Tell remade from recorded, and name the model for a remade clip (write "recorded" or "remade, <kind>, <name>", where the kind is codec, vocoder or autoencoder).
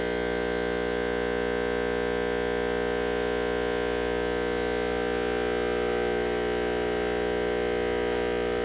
recorded